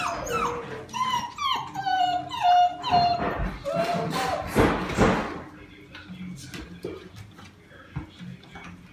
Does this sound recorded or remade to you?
recorded